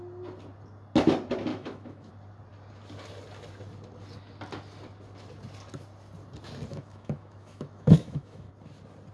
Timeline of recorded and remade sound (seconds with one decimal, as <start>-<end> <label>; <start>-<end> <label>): 0.0-1.5 recorded; 1.5-2.1 remade; 2.1-6.7 recorded; 6.7-8.5 remade; 8.5-9.1 recorded